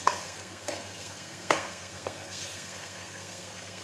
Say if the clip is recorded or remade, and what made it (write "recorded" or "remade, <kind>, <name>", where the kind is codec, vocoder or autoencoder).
remade, codec, SNAC